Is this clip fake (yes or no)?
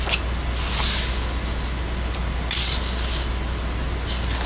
no